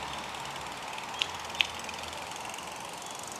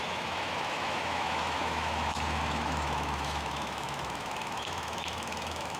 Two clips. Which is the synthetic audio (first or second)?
second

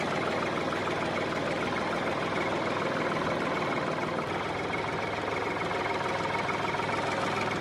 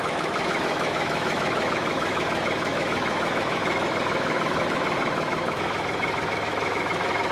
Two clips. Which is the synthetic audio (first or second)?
second